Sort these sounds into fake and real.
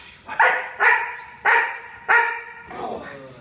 real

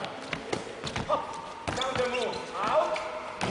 real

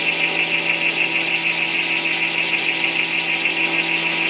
real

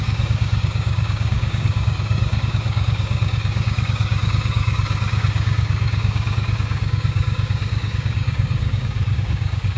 fake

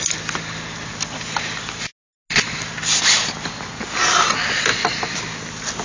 real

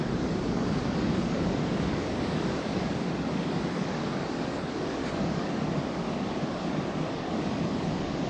fake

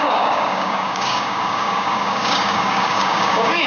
fake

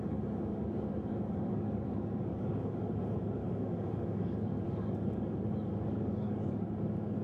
fake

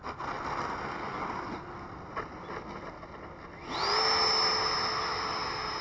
real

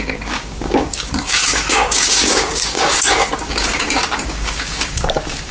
fake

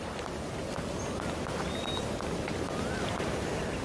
real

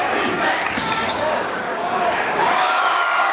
fake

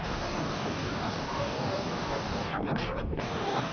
fake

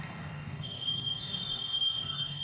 fake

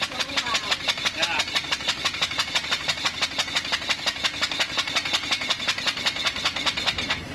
real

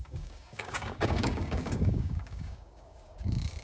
fake